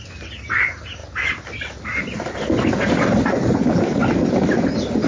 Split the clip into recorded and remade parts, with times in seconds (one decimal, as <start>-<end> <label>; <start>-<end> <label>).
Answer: 0.0-5.1 recorded